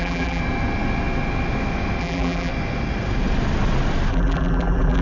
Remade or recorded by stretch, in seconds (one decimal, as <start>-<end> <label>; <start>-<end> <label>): 0.0-0.4 remade; 0.4-2.0 recorded; 2.0-2.5 remade; 2.5-4.1 recorded; 4.1-5.0 remade